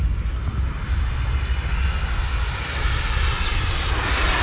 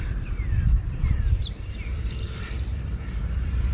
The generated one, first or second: second